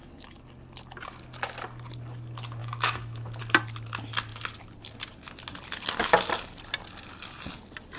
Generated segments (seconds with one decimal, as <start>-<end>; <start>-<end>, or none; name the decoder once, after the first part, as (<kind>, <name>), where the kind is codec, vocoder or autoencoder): 2.6-3.4 (autoencoder, DAC-VAE)